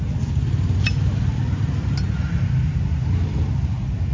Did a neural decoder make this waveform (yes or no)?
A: no